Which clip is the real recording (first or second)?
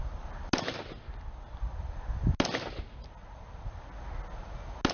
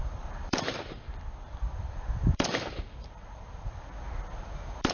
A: first